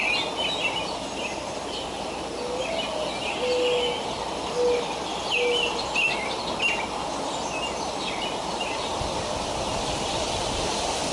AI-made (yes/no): no